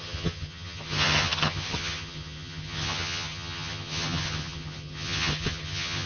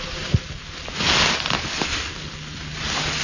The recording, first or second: second